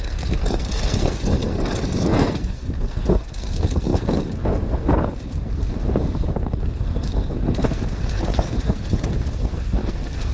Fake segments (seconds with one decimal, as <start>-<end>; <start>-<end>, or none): 0.0-10.3